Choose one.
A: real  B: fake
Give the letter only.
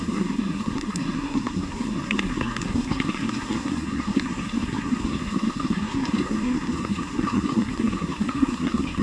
B